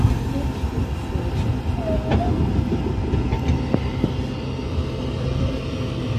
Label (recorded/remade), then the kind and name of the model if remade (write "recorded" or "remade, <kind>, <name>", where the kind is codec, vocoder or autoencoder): recorded